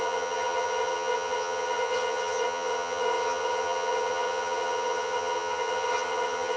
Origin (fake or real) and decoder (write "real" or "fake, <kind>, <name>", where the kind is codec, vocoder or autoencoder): fake, vocoder, HiFi-GAN